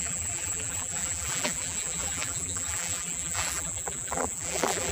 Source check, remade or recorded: remade